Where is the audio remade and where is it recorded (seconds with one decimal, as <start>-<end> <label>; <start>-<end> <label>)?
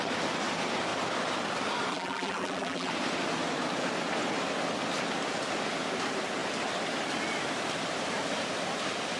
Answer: 0.0-1.9 recorded; 1.9-2.9 remade; 2.9-9.2 recorded